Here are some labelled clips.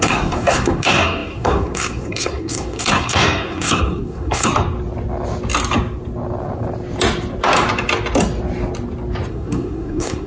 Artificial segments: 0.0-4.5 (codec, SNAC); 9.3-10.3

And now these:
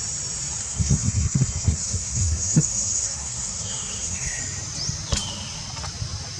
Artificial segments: 0.6-4.4 (codec, SNAC)

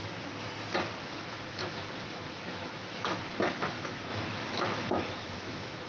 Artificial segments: 1.0-5.9 (autoencoder, DAC-VAE)

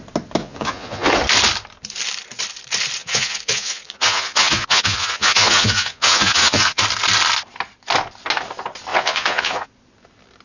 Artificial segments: 0.4-1.1 (vocoder, Vocos); 3.0-6.8; 8.9-9.7

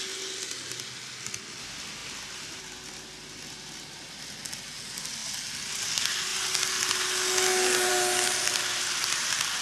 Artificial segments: none